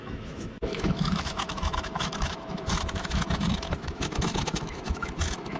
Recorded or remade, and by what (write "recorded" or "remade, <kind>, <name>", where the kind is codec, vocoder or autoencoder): remade, autoencoder, DAC-VAE